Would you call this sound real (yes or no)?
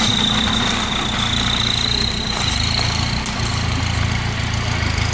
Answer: yes